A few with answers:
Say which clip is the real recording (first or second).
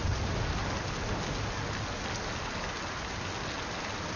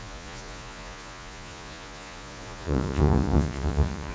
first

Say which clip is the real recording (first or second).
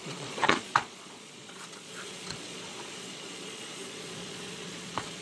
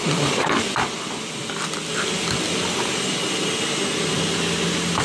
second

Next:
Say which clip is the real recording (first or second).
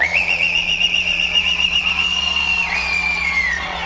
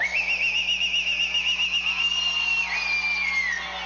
second